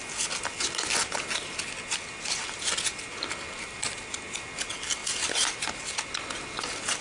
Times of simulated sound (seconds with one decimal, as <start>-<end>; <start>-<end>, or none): 5.0-5.6